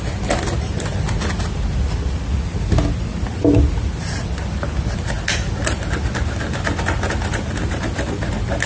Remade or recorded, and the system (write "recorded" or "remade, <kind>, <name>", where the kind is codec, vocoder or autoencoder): recorded